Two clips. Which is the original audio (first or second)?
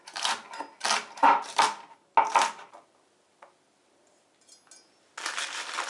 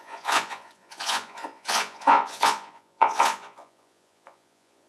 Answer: first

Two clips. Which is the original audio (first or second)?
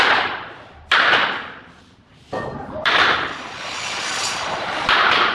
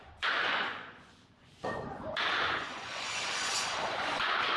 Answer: first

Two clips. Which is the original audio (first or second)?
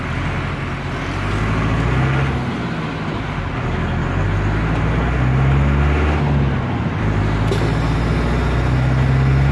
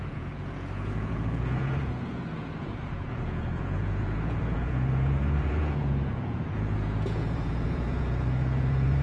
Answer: first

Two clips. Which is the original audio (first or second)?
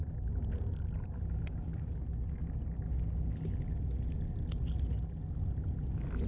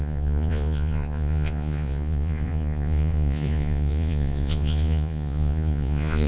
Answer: first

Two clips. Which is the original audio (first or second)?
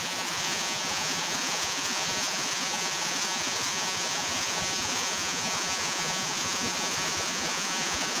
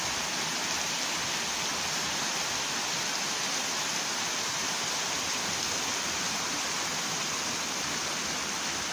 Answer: second